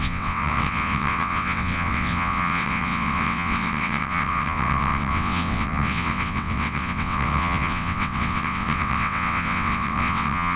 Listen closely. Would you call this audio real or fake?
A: fake